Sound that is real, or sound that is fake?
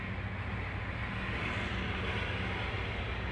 real